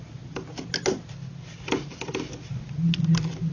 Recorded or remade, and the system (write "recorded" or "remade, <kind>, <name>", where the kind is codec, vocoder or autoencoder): recorded